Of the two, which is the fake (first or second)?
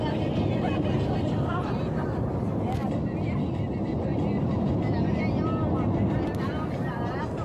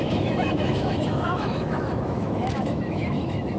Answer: second